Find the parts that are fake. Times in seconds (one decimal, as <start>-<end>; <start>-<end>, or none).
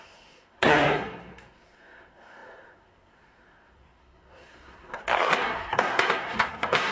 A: 0.0-6.9